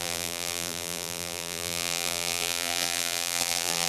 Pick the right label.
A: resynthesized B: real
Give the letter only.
A